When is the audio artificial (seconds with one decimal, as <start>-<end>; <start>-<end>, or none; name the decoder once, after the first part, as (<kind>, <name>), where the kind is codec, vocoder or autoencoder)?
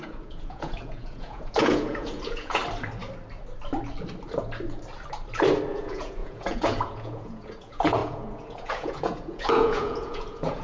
0.0-2.6 (vocoder, Vocos); 5.7-10.6